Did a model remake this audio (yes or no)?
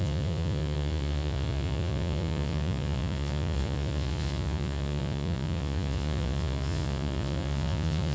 yes